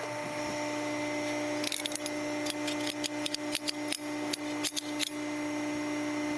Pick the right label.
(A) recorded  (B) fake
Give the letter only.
A